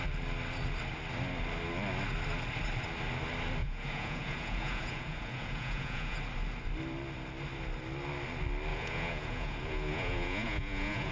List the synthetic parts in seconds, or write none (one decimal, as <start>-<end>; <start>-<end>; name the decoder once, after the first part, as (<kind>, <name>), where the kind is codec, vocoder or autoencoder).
3.6-6.2 (vocoder, Vocos); 8.7-11.1